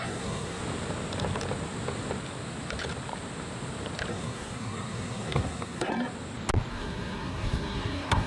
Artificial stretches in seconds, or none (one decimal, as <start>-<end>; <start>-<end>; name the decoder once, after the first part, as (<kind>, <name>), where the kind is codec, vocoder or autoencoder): 0.0-0.6 (codec, SNAC); 4.1-5.9; 6.7-8.3